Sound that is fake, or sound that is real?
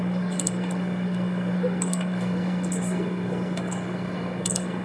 fake